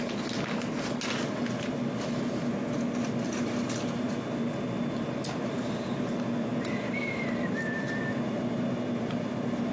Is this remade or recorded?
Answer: recorded